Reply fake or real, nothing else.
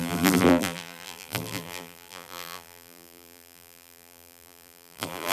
fake